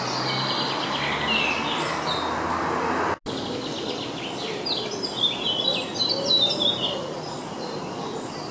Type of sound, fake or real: real